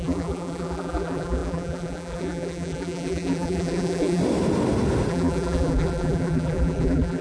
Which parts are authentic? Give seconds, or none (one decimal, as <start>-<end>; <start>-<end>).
4.2-5.1